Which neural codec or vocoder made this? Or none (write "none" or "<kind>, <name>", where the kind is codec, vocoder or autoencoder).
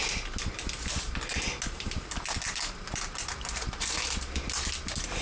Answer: none